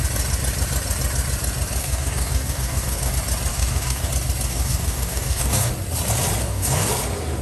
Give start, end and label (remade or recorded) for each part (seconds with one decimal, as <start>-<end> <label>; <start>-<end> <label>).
0.0-1.8 recorded; 1.8-3.1 remade; 3.1-3.5 recorded; 3.5-4.1 remade; 4.1-4.5 recorded; 4.5-5.7 remade; 5.7-6.4 recorded; 6.4-6.9 remade; 6.9-7.4 recorded